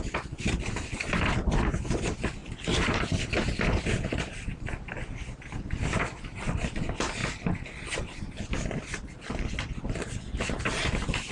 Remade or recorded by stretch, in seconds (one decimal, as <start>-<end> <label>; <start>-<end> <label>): 0.0-11.3 recorded